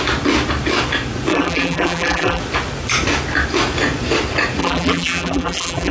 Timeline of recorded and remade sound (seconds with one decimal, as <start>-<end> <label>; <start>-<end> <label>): 0.0-1.3 recorded; 1.3-2.4 remade; 2.4-4.6 recorded; 4.6-5.9 remade